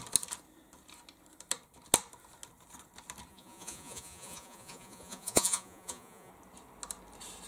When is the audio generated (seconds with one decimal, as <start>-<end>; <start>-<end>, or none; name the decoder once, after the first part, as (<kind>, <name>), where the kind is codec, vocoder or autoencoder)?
3.3-6.3 (vocoder, Vocos)